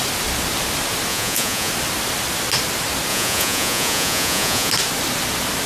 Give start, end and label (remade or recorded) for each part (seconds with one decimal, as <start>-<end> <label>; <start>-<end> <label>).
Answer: 0.0-1.1 recorded; 1.1-1.7 remade; 1.7-3.1 recorded; 3.1-4.7 remade; 4.7-5.7 recorded